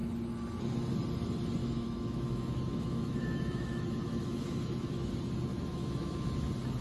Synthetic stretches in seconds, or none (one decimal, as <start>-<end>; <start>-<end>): 1.6-5.1; 5.5-6.3

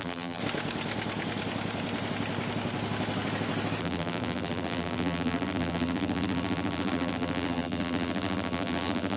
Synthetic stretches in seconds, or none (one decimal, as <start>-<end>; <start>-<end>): 0.0-0.4; 3.8-9.2

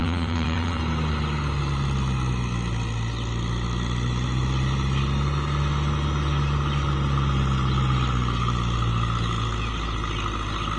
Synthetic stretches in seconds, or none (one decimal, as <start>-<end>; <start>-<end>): 0.0-0.8

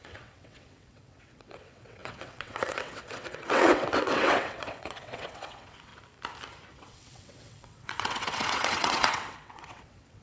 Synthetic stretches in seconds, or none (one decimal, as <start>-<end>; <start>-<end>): 0.0-5.9; 6.7-10.2